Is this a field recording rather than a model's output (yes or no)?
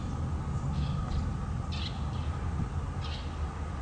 yes